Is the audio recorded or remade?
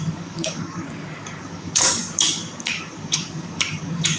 remade